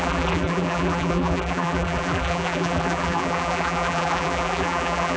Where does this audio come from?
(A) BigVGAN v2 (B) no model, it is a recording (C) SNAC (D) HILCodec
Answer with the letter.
A